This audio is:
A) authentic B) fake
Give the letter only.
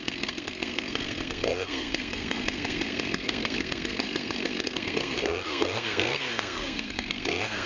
B